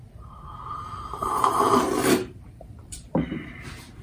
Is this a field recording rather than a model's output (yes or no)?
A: no